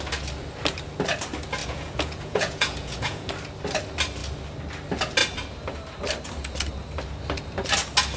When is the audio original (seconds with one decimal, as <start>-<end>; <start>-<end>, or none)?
0.0-1.6; 3.3-8.2